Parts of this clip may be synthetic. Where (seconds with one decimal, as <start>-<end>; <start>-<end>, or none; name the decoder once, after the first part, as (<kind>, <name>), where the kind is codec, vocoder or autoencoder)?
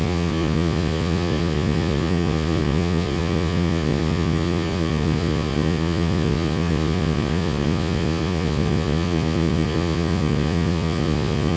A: 0.0-11.6 (vocoder, Vocos)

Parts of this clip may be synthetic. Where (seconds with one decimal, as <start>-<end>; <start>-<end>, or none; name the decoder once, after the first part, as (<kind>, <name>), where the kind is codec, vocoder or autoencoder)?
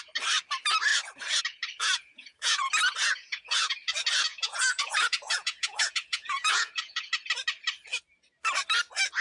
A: 1.8-2.7 (vocoder, Vocos); 3.1-3.8; 4.3-7.0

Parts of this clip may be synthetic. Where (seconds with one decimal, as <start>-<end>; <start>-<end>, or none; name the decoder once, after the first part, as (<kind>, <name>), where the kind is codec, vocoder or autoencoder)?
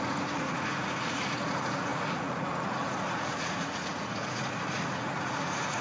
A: 0.0-5.8 (vocoder, Vocos)